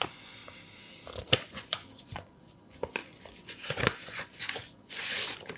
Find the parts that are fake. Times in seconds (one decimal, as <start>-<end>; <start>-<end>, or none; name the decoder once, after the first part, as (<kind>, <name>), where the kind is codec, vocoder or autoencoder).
0.0-0.4 (vocoder, Vocos); 1.4-5.6